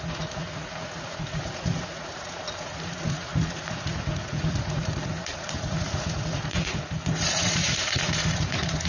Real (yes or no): no